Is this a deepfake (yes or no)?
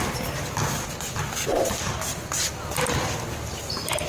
no